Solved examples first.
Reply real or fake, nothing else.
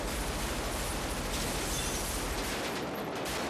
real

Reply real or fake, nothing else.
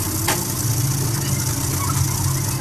real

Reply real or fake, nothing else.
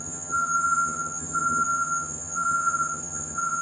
fake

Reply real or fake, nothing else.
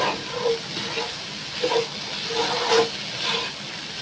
real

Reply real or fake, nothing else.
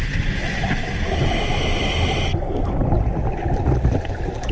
real